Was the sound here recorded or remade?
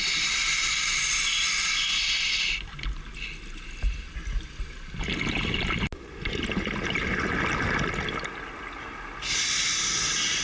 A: recorded